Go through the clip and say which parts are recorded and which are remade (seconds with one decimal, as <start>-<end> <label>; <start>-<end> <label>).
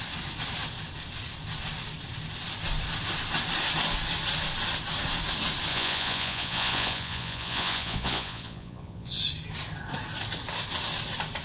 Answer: 0.0-5.7 recorded; 5.7-9.2 remade; 9.2-11.4 recorded